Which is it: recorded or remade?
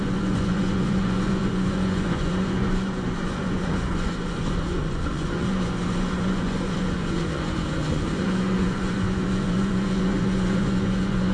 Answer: remade